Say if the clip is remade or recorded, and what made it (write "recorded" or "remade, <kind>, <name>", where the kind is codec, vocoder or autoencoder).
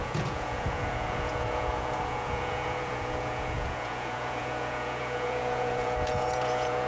remade, vocoder, Vocos